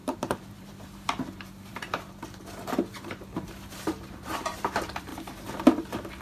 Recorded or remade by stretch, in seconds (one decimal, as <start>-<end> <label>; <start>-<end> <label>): 0.0-5.1 remade; 5.1-6.2 recorded